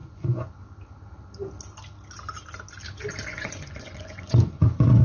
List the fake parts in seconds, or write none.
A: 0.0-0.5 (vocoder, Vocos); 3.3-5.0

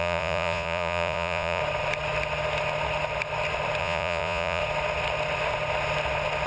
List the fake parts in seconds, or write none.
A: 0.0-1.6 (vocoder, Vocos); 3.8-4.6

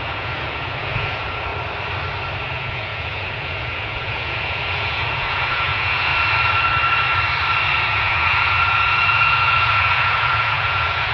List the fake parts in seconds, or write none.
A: 0.0-1.5 (vocoder, Vocos); 2.5-6.1; 7.9-11.1

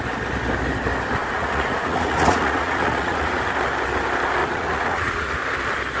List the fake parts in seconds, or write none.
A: 1.2-3.4 (vocoder, Vocos); 4.4-5.4

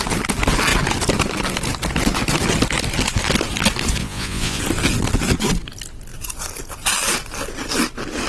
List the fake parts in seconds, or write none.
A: 4.0-4.6 (vocoder, Vocos)

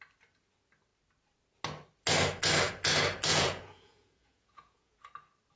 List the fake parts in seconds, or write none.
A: 3.3-5.1 (vocoder, Vocos)